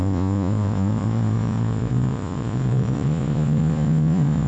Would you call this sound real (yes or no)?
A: no